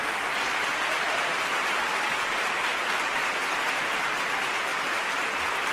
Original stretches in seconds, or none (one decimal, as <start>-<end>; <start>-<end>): 0.0-3.4; 4.2-4.7